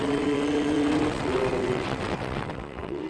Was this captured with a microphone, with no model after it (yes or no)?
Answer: no